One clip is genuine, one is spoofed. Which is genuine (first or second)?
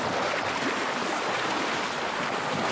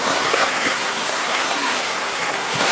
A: first